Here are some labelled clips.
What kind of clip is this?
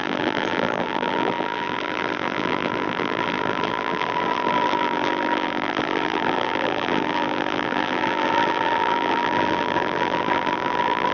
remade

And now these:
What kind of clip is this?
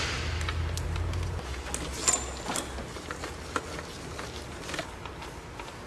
recorded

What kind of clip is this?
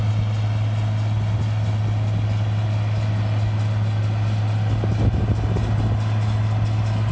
recorded